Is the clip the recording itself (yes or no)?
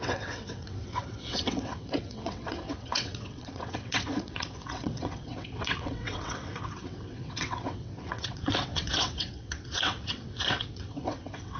no